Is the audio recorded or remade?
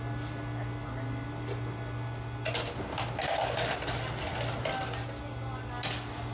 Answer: recorded